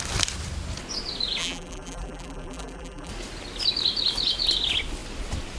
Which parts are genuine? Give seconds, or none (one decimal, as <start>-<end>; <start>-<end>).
0.0-1.4; 3.1-5.6